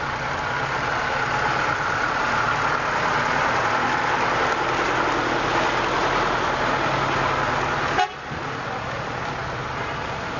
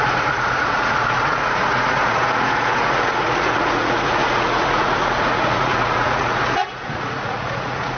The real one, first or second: first